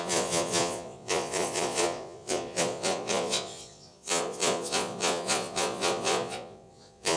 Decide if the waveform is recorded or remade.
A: remade